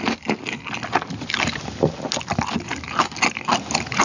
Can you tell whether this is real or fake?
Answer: real